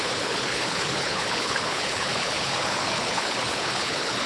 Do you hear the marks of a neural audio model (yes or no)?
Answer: yes